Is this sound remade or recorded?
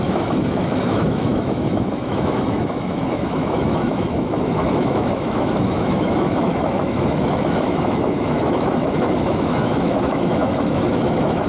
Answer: remade